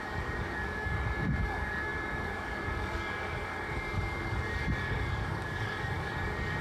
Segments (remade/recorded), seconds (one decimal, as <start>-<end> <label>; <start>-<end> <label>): 0.0-6.6 remade